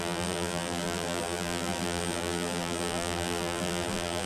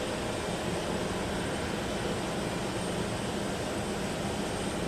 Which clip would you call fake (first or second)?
first